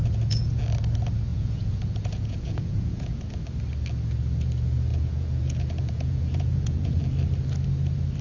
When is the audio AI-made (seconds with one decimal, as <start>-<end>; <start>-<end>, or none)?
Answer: 0.0-0.6; 1.3-3.2; 4.9-7.0